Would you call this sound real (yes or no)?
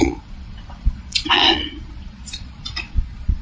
no